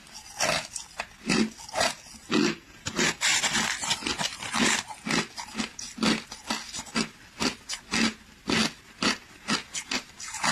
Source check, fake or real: real